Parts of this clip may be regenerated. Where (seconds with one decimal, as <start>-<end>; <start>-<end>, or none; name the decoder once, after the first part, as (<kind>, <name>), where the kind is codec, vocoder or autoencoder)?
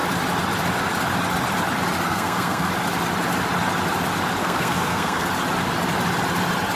2.1-2.7 (codec, SNAC); 4.4-5.3